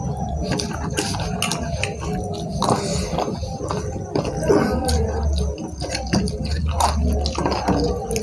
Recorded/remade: recorded